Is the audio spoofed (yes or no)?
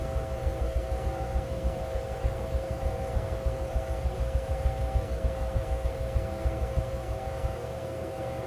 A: yes